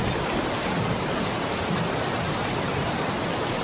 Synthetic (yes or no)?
no